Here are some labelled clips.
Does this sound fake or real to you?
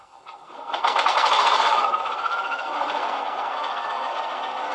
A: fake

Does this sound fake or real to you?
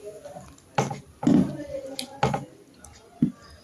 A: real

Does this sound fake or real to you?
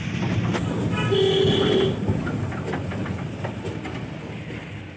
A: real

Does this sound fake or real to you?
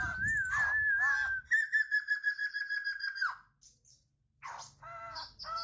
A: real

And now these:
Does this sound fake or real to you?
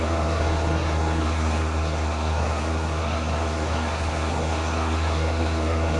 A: fake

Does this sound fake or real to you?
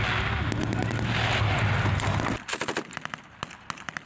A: real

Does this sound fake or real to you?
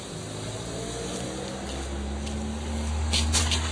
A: real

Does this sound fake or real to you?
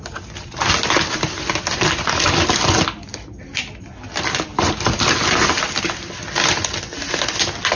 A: real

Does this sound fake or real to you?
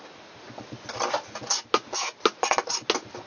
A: real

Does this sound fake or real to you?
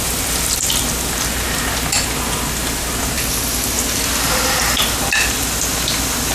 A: real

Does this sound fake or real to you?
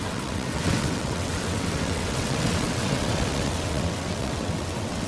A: fake